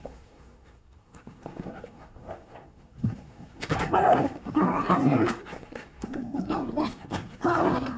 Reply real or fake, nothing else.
fake